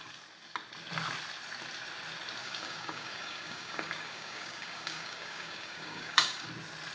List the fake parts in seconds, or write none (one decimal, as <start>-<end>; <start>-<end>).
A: 2.4-6.5